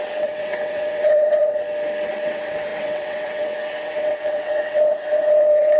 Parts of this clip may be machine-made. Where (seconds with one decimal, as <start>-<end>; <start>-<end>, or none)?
0.0-1.4; 2.1-5.8